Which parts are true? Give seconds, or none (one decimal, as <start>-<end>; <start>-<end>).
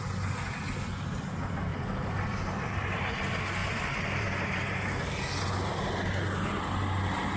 0.0-1.7; 3.0-3.6; 5.2-7.4